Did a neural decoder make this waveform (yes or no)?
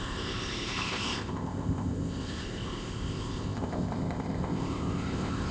yes